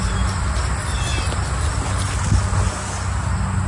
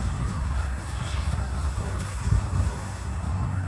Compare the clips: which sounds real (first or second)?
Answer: first